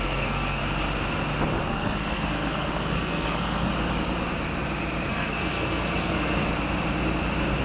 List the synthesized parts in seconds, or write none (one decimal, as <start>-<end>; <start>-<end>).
0.0-0.6; 1.6-3.7; 5.1-6.4